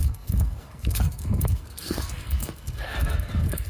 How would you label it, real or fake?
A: fake